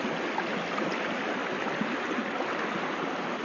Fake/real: real